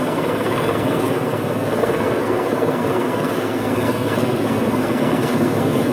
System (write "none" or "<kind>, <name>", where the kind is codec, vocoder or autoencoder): codec, SNAC